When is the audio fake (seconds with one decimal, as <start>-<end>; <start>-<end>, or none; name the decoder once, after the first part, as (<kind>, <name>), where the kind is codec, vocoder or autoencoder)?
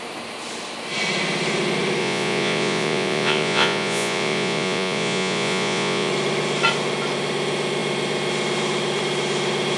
2.0-6.1 (vocoder, Vocos)